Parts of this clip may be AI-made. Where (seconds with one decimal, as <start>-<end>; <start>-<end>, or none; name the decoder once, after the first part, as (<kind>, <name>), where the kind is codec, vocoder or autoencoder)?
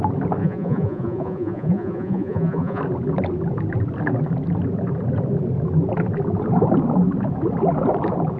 0.4-2.8 (vocoder, Vocos)